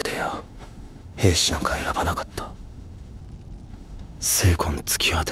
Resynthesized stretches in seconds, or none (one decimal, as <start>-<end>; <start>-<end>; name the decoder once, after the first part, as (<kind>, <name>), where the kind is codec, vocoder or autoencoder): 0.0-3.2 (autoencoder, DAC-VAE); 3.7-4.6